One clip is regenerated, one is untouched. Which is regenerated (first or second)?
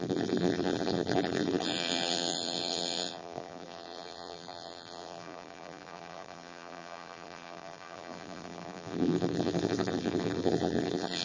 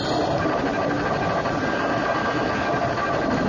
first